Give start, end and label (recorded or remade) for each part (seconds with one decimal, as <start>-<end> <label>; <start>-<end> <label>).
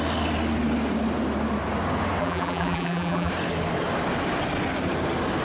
0.0-2.2 recorded; 2.2-3.3 remade; 3.3-5.4 recorded